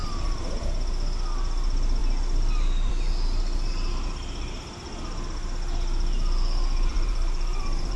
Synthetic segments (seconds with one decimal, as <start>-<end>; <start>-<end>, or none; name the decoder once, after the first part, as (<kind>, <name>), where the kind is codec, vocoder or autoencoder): 0.0-0.7 (vocoder, BigVGAN v2); 6.9-8.0

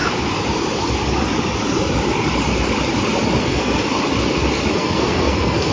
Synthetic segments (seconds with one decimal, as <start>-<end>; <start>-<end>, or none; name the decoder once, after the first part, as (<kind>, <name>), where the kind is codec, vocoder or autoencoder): 3.4-3.8 (codec, SNAC); 4.7-5.7

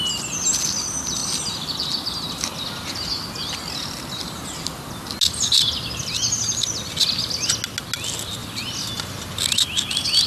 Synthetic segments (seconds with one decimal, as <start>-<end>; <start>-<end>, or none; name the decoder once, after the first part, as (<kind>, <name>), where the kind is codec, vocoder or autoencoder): none

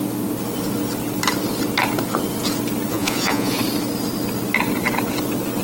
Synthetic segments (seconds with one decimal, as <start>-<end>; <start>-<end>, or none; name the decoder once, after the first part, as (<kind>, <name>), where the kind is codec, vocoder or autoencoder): 2.9-3.6 (vocoder, Vocos)

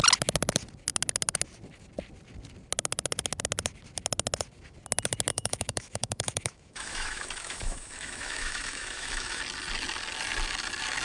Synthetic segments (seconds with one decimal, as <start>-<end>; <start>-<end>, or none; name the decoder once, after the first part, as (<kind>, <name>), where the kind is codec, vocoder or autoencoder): 5.3-9.4 (autoencoder, DAC-VAE)

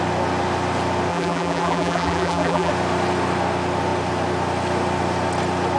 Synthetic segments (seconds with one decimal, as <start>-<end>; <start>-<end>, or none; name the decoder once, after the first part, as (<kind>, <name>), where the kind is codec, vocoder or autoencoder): 1.1-2.7 (vocoder, BigVGAN v2)

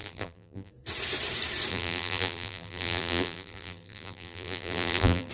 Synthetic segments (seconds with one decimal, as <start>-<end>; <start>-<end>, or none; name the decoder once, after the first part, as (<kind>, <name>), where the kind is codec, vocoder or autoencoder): 0.0-0.7 (vocoder, BigVGAN v2); 1.7-5.3